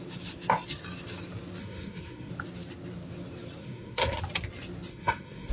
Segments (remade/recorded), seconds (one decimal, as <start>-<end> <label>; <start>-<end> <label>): 0.0-1.6 recorded; 1.6-2.3 remade; 2.3-3.6 recorded; 3.6-4.2 remade; 4.2-4.9 recorded; 4.9-5.5 remade